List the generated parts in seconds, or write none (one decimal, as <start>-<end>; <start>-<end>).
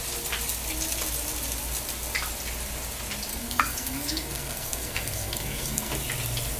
3.3-5.9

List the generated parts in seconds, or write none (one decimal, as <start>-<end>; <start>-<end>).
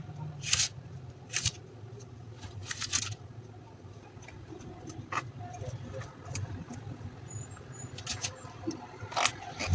0.0-2.6; 4.2-9.7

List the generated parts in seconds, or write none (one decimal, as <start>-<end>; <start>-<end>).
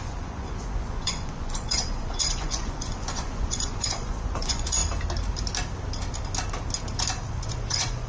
0.0-4.8; 7.3-8.1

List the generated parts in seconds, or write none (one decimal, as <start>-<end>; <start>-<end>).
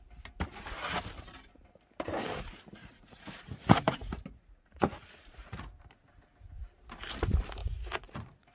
2.8-5.6; 7.6-8.5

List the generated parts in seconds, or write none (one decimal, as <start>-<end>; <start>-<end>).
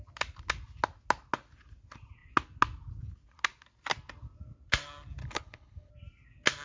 5.2-5.9